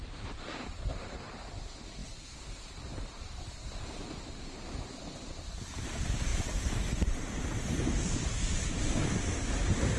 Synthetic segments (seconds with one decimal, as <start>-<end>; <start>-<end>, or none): 0.0-10.0